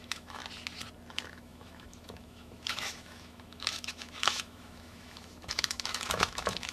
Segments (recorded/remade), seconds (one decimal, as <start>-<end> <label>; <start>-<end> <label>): 0.0-0.4 remade; 0.4-1.1 recorded; 1.1-6.7 remade